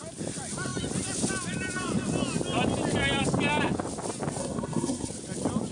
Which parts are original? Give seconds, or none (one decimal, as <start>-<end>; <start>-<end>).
0.0-4.4; 5.1-5.7